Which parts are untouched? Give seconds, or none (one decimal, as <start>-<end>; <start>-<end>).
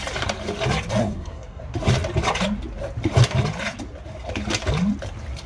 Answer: 0.0-1.0; 1.6-5.5